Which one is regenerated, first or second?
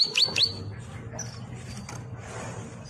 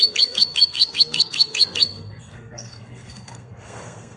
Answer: second